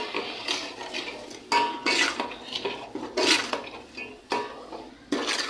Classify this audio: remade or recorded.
recorded